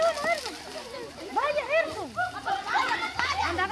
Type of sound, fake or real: real